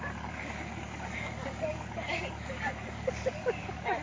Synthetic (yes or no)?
yes